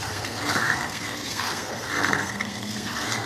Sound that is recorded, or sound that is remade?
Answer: remade